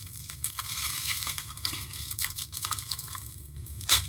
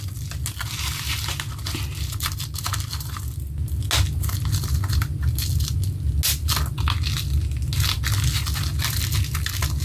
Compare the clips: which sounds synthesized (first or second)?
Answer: first